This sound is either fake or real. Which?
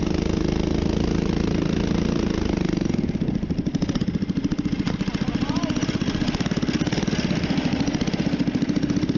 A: real